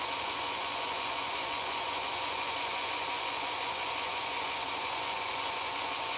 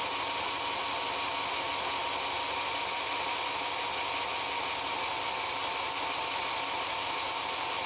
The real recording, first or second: second